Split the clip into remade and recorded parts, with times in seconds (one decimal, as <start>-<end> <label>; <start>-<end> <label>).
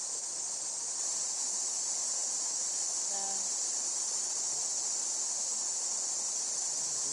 0.0-7.1 recorded